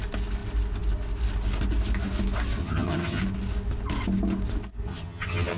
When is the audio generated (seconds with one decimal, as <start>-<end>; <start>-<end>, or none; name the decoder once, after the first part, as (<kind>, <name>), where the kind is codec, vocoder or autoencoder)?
2.6-3.2 (vocoder, HiFi-GAN); 4.9-5.6